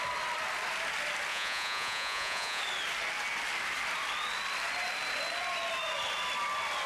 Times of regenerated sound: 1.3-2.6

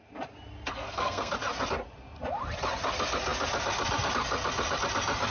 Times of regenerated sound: 0.7-1.3

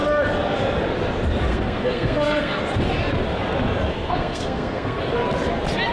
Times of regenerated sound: 1.5-2.6; 3.9-5.0

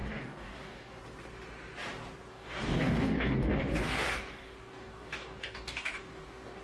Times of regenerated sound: 0.0-1.0; 2.3-6.6

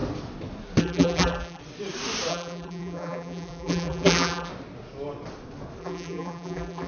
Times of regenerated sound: 0.8-1.6; 2.3-4.5; 5.8-6.9

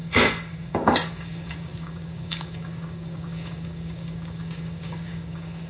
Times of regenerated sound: 0.0-5.7

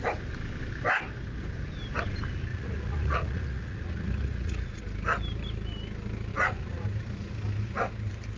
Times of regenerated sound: 2.5-4.8; 6.3-6.8

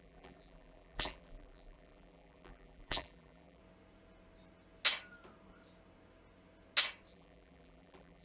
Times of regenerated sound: 0.0-3.6; 7.1-8.2